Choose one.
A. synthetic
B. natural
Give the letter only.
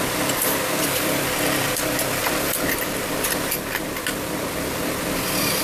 A